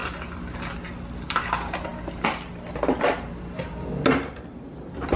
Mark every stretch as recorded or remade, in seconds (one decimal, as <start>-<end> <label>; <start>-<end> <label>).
0.0-5.2 recorded